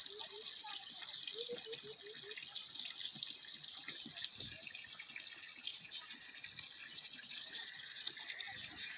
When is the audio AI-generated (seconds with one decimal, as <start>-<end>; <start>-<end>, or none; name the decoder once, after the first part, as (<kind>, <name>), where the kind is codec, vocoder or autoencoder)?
5.7-6.3 (vocoder, Vocos); 6.8-8.1